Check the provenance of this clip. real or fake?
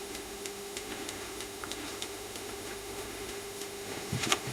fake